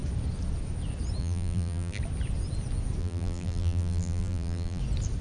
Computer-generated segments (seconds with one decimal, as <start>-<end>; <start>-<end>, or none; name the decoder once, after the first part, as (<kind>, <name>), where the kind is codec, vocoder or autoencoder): 1.2-2.0 (vocoder, BigVGAN v2); 3.0-4.8